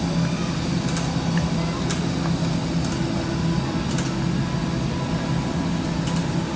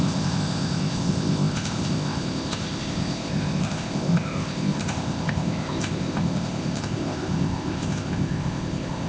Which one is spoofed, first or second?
second